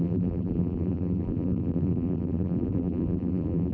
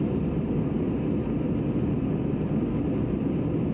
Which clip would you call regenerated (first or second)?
first